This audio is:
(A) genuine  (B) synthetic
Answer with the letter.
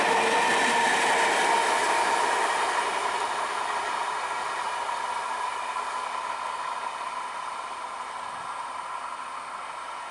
A